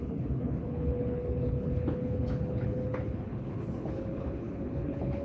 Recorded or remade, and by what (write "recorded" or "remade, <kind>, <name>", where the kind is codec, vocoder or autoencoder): remade, codec, HILCodec